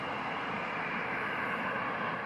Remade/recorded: recorded